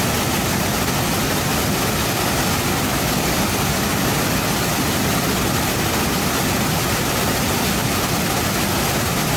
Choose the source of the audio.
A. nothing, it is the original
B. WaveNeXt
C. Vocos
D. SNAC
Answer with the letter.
A